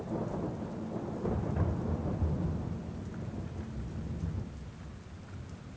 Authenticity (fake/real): real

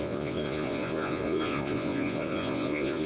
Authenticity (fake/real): fake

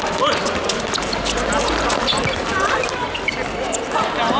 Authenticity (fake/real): real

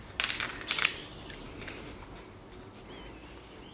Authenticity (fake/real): real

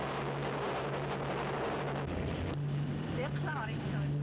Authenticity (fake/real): real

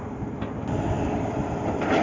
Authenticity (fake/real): real